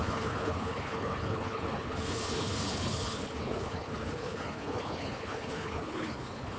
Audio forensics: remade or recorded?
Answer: remade